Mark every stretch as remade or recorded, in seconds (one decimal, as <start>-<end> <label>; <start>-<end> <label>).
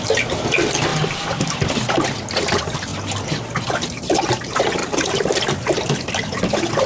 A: 0.0-0.9 recorded; 0.9-1.7 remade; 1.7-4.8 recorded; 4.8-5.4 remade; 5.4-6.9 recorded